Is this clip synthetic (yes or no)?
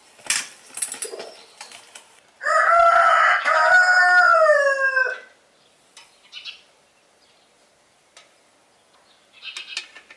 no